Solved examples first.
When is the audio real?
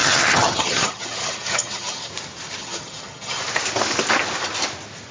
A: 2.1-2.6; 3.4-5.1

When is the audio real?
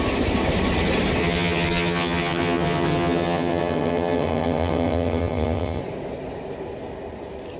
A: 0.0-1.2; 5.8-7.6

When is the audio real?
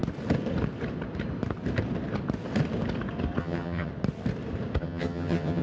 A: 0.0-3.4; 3.9-4.8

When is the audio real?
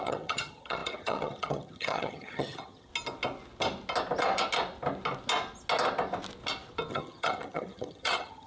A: 2.9-6.9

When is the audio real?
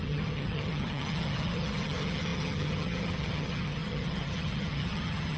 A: none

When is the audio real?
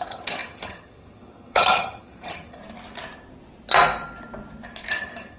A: 2.6-4.9